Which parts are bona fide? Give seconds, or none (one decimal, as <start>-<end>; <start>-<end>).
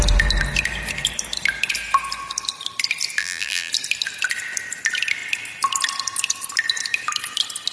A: 0.0-3.2; 3.7-7.7